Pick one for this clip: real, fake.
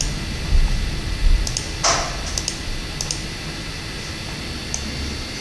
real